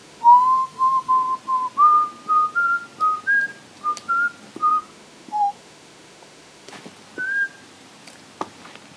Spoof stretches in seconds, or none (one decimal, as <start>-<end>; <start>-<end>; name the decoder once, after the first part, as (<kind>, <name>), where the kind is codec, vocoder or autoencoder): 0.0-1.1 (autoencoder, DAC-VAE); 4.7-6.7